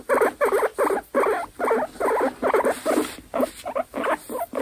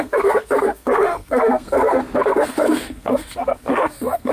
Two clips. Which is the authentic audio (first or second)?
first